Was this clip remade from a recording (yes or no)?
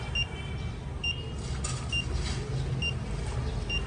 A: no